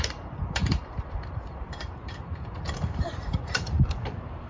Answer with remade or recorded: remade